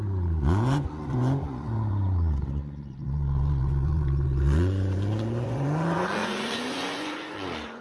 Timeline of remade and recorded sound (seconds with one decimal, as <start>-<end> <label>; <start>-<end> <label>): 0.0-7.8 remade